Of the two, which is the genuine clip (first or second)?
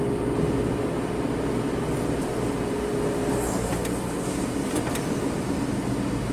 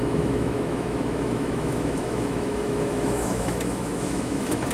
first